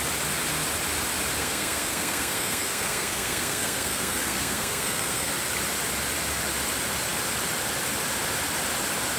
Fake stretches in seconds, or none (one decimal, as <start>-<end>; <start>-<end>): 1.4-5.3